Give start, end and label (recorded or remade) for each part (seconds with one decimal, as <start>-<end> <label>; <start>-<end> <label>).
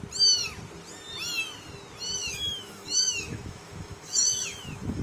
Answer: 0.0-2.2 recorded; 2.2-5.0 remade